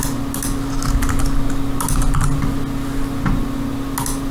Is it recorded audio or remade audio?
recorded